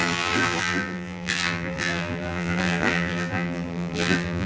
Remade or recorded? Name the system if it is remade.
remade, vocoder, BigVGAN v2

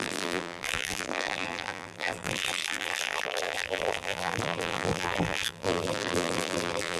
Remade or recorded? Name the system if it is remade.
remade, vocoder, BigVGAN v2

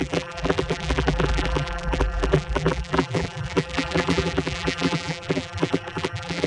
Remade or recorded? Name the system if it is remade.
remade, vocoder, BigVGAN v2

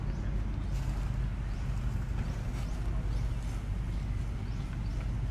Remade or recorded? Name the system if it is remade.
recorded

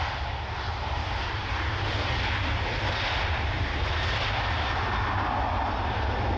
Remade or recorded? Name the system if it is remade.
recorded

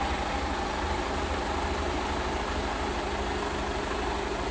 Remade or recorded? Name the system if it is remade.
recorded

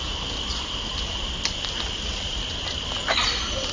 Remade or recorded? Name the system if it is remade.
remade, vocoder, BigVGAN v2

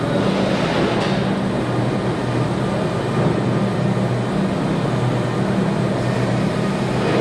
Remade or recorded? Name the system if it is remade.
recorded